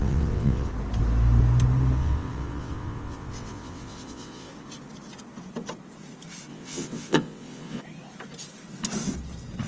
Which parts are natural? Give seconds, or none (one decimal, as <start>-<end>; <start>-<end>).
0.7-2.0; 4.5-6.5; 7.8-9.7